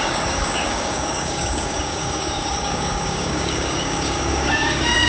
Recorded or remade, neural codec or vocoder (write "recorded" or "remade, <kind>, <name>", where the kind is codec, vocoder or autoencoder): remade, codec, DAC